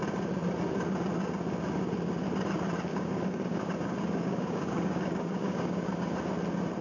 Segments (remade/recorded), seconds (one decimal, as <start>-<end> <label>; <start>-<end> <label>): 0.0-2.9 recorded; 2.9-6.2 remade; 6.2-6.8 recorded